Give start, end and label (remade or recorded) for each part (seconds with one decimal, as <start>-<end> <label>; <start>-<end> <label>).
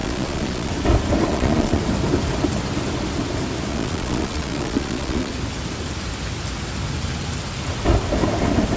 0.0-0.7 remade; 0.7-1.3 recorded; 1.3-1.8 remade; 1.8-3.7 recorded; 3.7-5.3 remade; 5.3-8.8 recorded